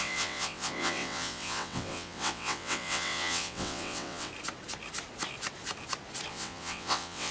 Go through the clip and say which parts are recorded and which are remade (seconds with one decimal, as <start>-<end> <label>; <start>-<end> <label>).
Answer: 0.0-4.3 remade; 4.3-6.3 recorded; 6.3-7.3 remade